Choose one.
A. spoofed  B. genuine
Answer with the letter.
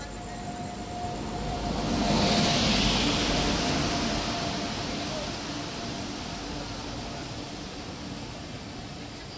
B